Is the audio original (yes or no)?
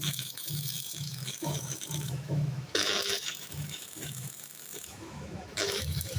no